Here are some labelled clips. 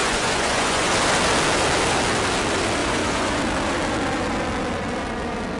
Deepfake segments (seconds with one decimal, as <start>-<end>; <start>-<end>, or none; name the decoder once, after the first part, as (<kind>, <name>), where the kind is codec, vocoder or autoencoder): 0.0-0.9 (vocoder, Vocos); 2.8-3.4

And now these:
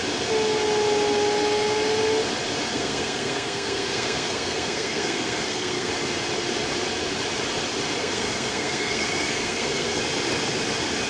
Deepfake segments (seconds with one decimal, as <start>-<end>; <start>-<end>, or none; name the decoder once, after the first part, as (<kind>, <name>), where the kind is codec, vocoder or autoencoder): 2.7-5.9 (codec, SNAC); 8.0-10.0

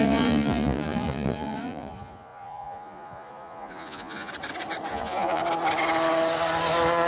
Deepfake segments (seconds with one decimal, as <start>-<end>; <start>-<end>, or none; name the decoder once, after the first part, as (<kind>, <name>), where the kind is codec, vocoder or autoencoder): 0.0-4.3 (vocoder, Vocos); 4.9-5.4